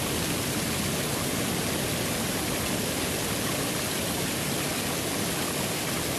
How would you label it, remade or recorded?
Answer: recorded